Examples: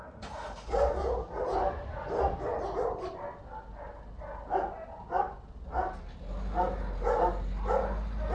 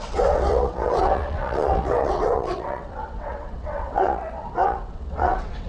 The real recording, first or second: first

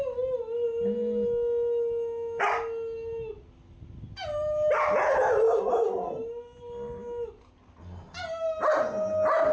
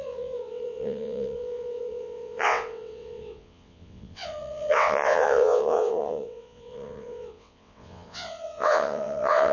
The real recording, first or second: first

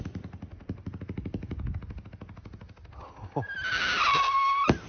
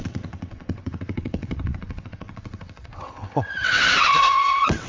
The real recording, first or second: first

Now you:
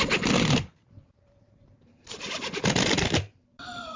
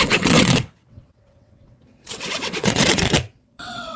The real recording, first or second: first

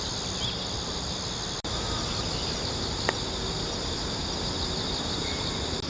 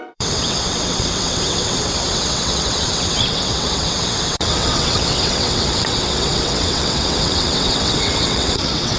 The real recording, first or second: first